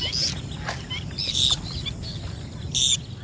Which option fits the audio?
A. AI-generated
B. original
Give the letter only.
B